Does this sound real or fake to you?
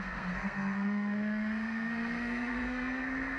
fake